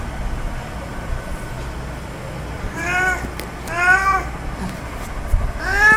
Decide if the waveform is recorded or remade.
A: recorded